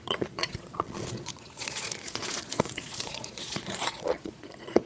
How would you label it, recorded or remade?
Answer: remade